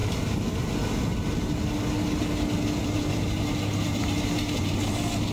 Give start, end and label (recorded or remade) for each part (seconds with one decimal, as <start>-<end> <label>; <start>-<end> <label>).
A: 0.0-2.8 recorded; 2.8-4.6 remade; 4.6-5.3 recorded